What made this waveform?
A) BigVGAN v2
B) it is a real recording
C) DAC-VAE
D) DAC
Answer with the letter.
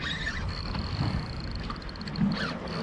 B